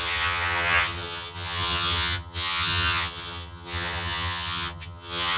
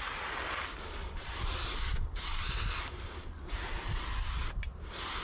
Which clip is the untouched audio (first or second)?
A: second